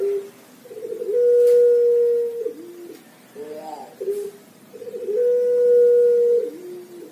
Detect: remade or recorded recorded